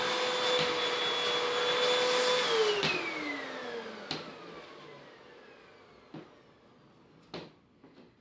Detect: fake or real real